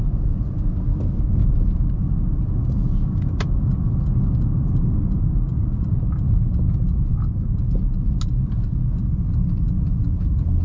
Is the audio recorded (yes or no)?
yes